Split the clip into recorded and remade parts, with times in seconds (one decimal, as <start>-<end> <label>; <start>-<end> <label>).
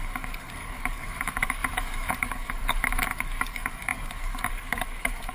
0.0-5.3 remade